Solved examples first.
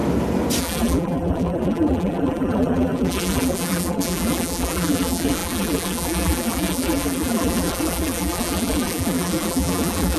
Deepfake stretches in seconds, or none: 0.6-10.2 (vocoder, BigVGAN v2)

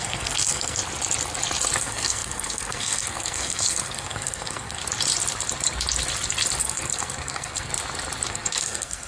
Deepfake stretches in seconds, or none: 0.0-0.8 (codec, SNAC); 1.8-4.8; 6.6-7.7; 8.3-9.1

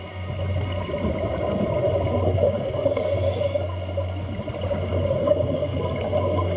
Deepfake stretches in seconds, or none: 2.9-3.4 (codec, DAC); 4.9-5.8

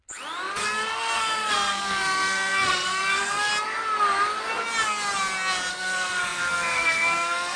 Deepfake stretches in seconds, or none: 0.6-3.5 (codec, SNAC); 5.7-7.6

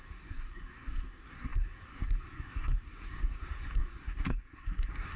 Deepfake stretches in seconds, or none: 0.0-5.2 (codec, SNAC)

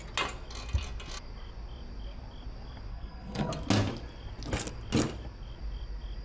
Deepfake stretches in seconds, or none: 2.9-3.5 (codec, SNAC)

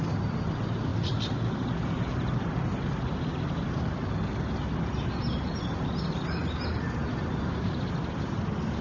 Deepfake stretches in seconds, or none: none

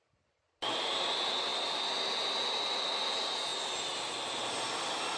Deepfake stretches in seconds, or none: none